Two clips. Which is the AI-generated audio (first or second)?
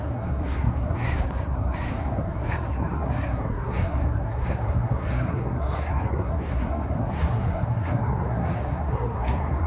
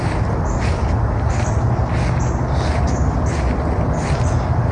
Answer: first